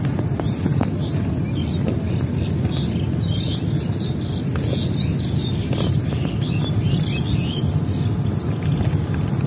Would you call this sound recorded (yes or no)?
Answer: yes